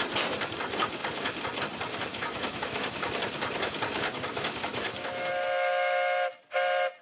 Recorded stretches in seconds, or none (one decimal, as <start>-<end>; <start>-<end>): 0.0-2.1; 3.1-4.1; 5.3-7.0